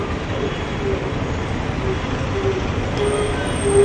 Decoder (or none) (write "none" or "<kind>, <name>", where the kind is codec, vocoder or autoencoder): none